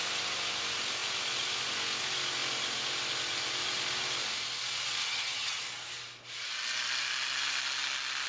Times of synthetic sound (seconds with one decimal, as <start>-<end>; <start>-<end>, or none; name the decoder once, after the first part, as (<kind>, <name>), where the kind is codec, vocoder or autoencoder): 5.0-5.6 (vocoder, HiFi-GAN)